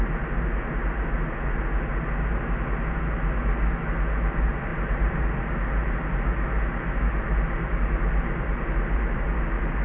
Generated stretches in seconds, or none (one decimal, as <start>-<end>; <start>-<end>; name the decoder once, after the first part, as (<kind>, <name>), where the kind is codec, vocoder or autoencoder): 4.7-5.2 (vocoder, BigVGAN v2)